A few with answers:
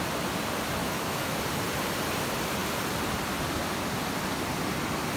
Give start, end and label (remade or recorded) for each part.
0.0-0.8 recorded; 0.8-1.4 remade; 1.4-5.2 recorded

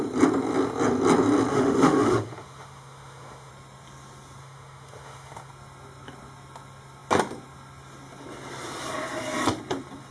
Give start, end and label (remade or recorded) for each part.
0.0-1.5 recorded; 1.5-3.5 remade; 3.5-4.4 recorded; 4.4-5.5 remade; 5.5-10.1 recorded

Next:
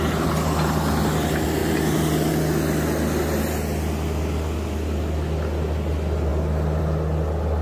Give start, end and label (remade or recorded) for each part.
0.0-7.6 recorded